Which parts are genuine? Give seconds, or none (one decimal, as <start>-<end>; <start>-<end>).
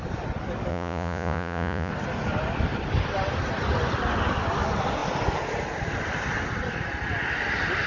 0.0-0.7; 1.9-7.9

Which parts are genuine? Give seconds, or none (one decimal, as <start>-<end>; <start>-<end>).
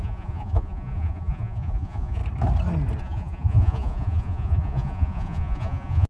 2.2-3.0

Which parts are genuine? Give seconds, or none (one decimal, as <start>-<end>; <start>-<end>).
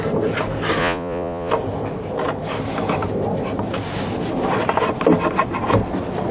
0.0-0.8; 1.5-6.3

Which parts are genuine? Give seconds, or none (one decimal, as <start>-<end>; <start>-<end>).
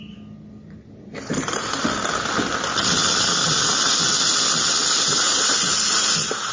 0.0-5.1; 6.1-6.5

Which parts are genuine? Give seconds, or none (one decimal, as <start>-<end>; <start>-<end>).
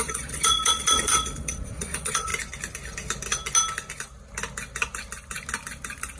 2.3-6.2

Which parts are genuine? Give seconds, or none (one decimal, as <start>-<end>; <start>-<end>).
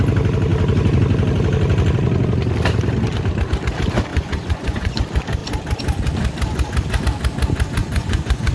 0.0-4.1; 5.0-7.8